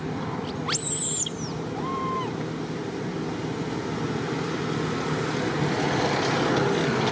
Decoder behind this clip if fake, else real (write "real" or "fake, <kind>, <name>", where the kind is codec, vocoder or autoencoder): real